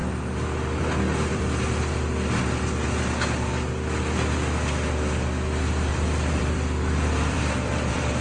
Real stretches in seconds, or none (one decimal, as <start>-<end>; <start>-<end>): 0.0-1.3; 2.4-5.9